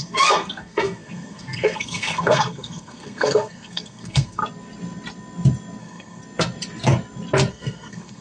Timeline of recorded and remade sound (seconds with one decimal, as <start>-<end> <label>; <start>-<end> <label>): 0.0-4.4 remade; 4.4-5.8 recorded; 5.8-6.2 remade; 6.2-7.5 recorded; 7.5-8.2 remade